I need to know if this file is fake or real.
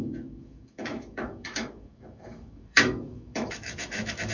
fake